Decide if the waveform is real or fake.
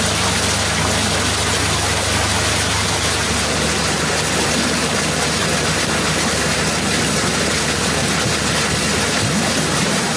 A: real